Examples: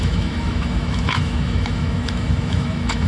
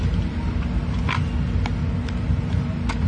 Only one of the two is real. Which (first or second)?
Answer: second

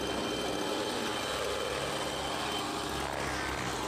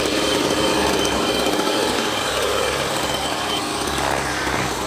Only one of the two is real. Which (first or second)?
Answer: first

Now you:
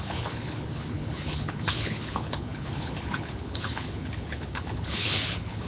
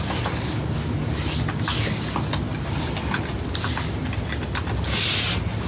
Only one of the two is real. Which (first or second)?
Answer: second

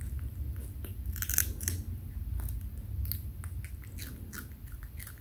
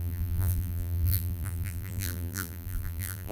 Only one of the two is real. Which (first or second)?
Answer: first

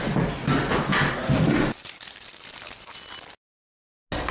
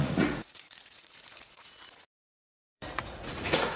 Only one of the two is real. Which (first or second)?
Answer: first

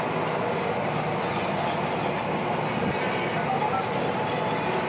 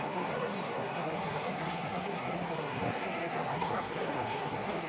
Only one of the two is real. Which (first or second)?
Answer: first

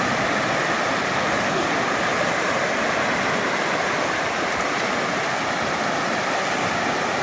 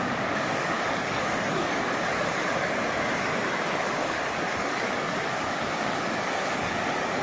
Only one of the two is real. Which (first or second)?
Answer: first